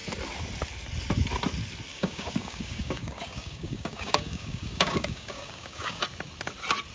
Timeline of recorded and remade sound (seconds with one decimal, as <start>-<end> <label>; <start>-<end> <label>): 0.0-1.9 recorded; 1.9-6.0 remade; 6.0-6.9 recorded